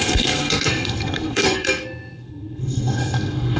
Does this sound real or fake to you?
fake